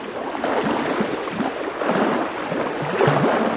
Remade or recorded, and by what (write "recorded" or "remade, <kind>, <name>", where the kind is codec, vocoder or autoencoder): recorded